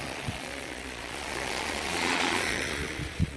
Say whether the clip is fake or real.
fake